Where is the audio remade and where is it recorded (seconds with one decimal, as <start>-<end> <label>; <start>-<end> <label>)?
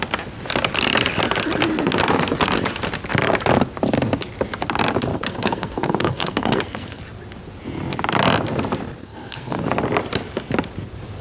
0.0-5.1 recorded; 5.1-7.0 remade; 7.0-9.0 recorded; 9.0-9.6 remade; 9.6-11.2 recorded